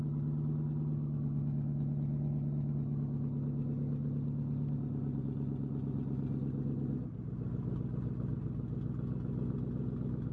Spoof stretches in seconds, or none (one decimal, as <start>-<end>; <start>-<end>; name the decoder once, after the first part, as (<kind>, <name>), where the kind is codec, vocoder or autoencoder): none